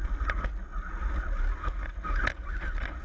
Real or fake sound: real